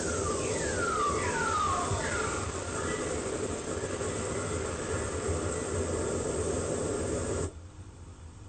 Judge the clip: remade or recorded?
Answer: recorded